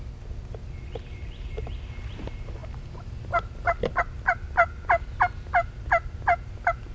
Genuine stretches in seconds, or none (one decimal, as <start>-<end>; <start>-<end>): 0.0-6.9